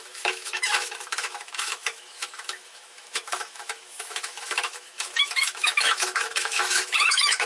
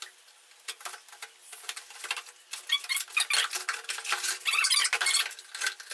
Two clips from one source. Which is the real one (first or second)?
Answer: second